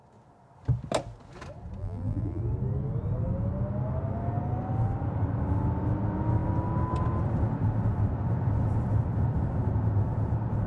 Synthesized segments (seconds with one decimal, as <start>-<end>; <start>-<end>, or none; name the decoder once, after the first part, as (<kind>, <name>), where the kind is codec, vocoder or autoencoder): 1.8-2.4 (vocoder, BigVGAN v2)